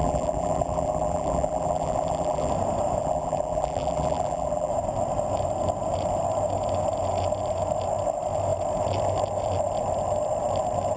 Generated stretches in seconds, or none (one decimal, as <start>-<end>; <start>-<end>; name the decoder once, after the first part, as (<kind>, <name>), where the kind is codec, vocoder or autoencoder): 0.0-2.5 (vocoder, BigVGAN v2); 3.0-4.7